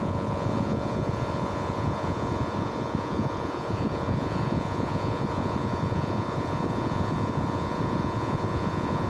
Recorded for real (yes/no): no